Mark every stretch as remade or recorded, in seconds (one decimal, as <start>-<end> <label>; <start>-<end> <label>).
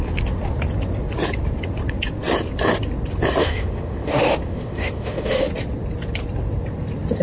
0.0-3.4 recorded; 3.4-5.5 remade; 5.5-7.2 recorded